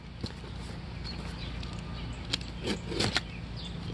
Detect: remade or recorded recorded